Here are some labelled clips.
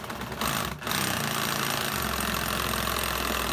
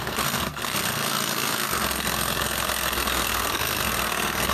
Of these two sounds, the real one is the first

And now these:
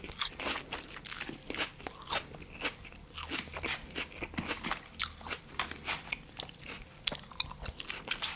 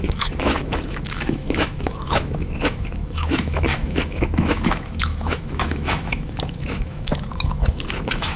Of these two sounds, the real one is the first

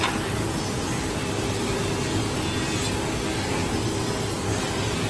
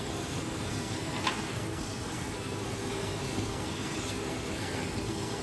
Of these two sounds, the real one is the first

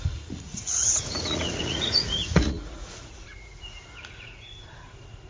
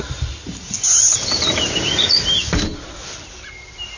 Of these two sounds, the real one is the second